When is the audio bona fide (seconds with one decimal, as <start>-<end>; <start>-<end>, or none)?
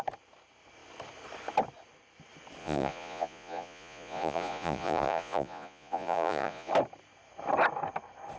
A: 0.0-2.6; 6.7-8.4